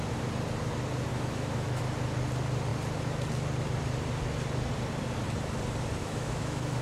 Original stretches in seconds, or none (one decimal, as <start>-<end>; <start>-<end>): 0.0-1.1; 1.8-6.0